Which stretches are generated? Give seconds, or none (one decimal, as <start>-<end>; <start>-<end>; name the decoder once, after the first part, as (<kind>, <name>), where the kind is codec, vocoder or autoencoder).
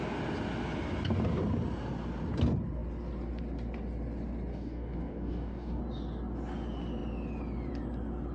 4.5-5.8 (codec, DAC)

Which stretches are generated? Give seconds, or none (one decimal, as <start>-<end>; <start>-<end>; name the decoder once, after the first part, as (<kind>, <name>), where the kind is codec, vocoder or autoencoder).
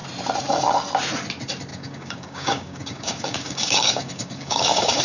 1.7-5.0 (codec, DAC)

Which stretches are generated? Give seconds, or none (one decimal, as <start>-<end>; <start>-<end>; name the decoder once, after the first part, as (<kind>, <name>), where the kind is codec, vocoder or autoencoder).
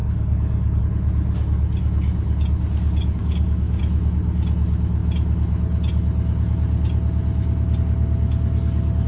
0.0-0.8 (codec, DAC); 3.2-3.8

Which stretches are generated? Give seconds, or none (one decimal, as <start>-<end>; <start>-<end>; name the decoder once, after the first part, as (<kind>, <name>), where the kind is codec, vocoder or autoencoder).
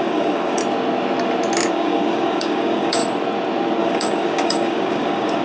0.0-0.6 (codec, DAC); 1.7-3.0; 3.8-5.4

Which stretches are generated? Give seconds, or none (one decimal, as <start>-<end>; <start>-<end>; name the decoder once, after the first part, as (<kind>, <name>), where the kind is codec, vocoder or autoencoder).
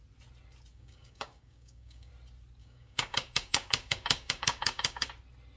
0.7-2.1 (codec, DAC); 2.6-5.1